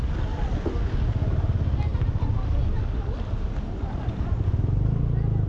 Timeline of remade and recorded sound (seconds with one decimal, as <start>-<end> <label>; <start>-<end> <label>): 0.0-1.9 recorded; 1.9-3.3 remade; 3.3-5.5 recorded